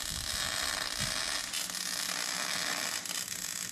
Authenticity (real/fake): real